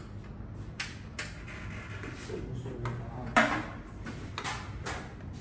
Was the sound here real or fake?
real